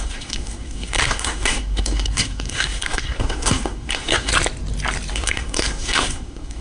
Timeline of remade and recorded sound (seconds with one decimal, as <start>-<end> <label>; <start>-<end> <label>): 0.0-4.3 remade; 4.3-5.1 recorded; 5.1-6.6 remade